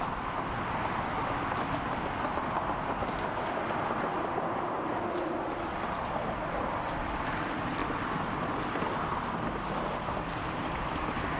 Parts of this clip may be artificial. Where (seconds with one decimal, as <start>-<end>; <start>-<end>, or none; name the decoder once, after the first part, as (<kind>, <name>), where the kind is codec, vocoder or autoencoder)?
none